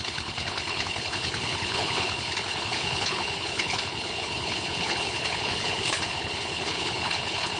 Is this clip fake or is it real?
fake